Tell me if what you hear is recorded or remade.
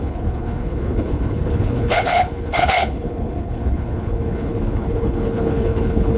remade